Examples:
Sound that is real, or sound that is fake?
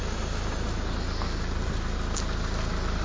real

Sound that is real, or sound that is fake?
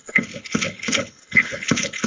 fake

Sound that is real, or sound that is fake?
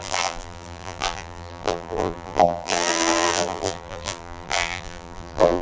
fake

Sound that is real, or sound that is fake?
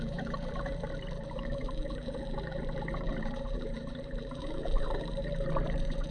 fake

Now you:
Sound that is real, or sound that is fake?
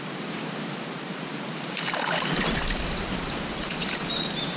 real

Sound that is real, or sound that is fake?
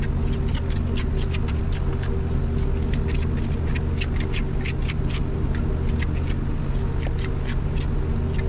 real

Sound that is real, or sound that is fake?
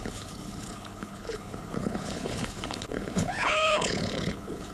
fake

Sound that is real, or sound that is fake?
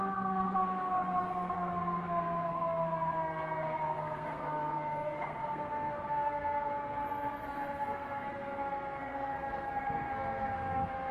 fake